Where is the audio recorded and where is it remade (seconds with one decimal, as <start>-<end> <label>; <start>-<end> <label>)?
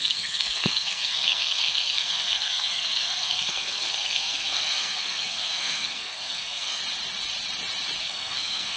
0.0-6.8 remade; 6.8-8.0 recorded; 8.0-8.8 remade